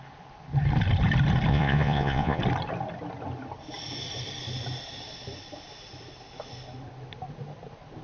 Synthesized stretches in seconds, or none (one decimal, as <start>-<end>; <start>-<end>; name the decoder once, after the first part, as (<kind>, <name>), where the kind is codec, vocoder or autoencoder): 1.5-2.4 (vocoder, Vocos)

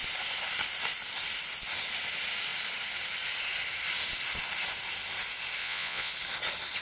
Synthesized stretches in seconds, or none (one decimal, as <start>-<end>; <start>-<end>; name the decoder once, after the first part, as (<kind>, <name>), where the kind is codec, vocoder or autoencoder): 5.6-6.1 (vocoder, Vocos)

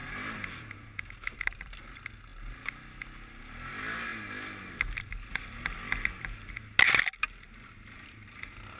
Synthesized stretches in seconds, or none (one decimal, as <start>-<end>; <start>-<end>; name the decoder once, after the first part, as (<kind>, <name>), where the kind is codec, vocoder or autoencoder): none

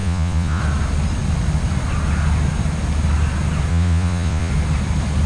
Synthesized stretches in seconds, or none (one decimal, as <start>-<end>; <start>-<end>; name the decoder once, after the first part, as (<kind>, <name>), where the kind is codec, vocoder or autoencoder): 0.0-0.6 (vocoder, Vocos); 3.7-4.5

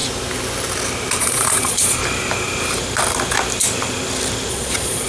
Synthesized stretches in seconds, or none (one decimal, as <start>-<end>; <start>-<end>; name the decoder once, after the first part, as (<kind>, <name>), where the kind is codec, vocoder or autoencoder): 1.2-2.0 (vocoder, Vocos); 4.5-5.1